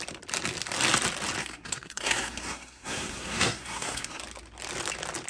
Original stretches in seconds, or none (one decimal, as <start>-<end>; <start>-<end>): 0.0-1.4; 4.2-5.3